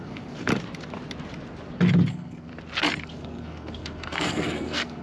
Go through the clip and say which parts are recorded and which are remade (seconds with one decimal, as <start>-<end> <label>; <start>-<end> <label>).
0.0-0.5 remade; 0.5-2.1 recorded; 2.1-2.5 remade; 2.5-3.0 recorded; 3.0-5.0 remade